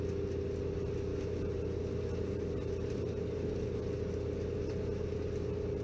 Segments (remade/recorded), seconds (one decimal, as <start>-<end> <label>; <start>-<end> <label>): 0.0-5.8 recorded